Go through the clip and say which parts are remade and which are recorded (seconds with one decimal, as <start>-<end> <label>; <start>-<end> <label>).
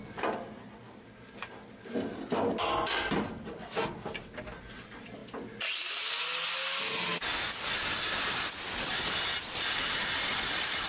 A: 0.0-10.9 recorded